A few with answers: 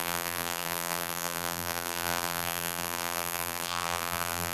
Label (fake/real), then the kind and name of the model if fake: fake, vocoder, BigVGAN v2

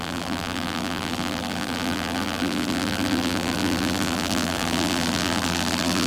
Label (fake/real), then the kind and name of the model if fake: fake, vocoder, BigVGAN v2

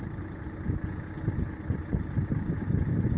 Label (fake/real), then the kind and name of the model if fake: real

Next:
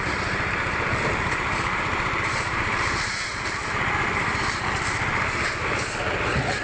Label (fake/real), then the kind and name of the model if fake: fake, vocoder, BigVGAN v2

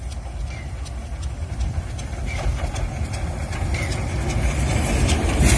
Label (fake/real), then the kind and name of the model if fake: real